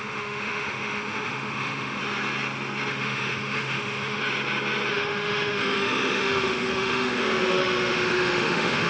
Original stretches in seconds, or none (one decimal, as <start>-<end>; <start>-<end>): 2.0-2.9; 4.2-4.9